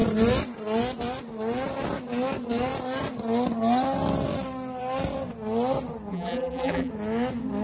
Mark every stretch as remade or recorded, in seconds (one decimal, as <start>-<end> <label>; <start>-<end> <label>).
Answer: 0.0-6.1 recorded; 6.1-6.9 remade; 6.9-7.6 recorded